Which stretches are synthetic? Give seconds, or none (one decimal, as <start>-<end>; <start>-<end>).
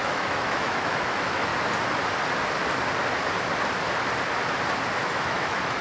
0.0-1.5; 5.0-5.8